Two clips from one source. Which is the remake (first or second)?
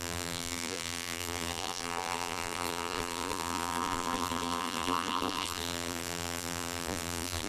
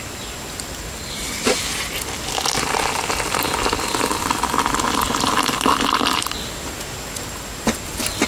first